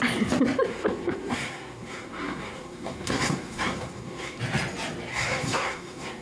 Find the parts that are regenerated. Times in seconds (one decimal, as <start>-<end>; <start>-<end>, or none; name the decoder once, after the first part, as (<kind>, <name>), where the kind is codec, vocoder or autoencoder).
0.7-4.4 (codec, SNAC); 5.1-6.2